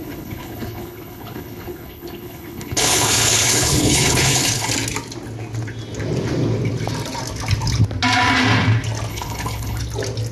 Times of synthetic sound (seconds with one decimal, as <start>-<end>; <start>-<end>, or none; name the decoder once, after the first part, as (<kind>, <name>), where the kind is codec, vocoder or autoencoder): 0.0-4.7 (codec, HILCodec); 9.1-9.8